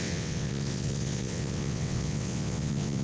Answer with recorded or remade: remade